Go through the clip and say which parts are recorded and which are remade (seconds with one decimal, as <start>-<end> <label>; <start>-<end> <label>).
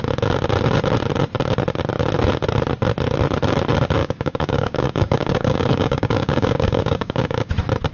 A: 0.0-4.0 recorded; 4.0-7.5 remade; 7.5-7.9 recorded